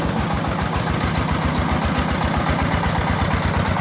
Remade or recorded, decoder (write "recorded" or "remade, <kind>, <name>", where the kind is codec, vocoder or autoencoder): recorded